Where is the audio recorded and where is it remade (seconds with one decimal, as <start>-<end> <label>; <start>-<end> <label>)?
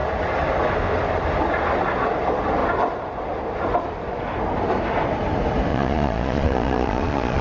0.0-5.7 recorded; 5.7-7.4 remade